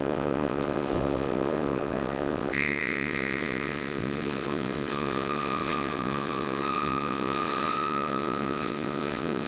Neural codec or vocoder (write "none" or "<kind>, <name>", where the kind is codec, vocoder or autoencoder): vocoder, WaveNeXt